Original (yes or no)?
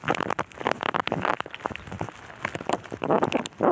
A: yes